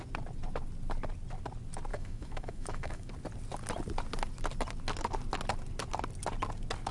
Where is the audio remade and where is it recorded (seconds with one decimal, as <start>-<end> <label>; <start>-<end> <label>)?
0.0-1.9 recorded; 1.9-3.1 remade; 3.1-6.9 recorded